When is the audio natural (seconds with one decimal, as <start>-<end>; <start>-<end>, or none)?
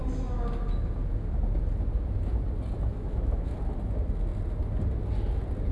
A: 0.0-2.9; 3.6-5.7